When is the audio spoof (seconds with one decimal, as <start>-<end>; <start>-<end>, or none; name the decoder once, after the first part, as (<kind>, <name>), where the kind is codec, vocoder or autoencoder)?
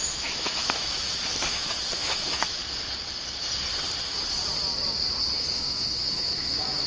0.0-2.6 (autoencoder, DAC-VAE); 5.4-6.9